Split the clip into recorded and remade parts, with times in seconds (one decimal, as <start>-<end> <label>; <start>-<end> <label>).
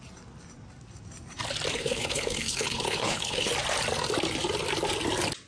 0.0-1.7 recorded; 1.7-3.5 remade; 3.5-5.5 recorded